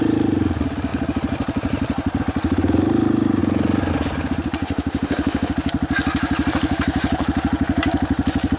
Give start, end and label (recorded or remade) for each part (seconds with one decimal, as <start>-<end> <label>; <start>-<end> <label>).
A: 0.0-4.6 recorded; 4.6-5.5 remade; 5.5-8.6 recorded